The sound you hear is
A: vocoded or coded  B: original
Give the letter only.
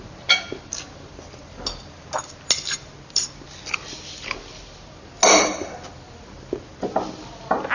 B